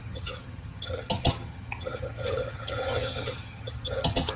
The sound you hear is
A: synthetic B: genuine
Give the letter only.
A